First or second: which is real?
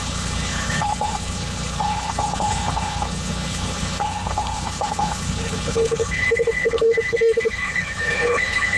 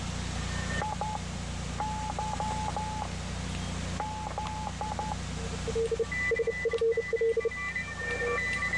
second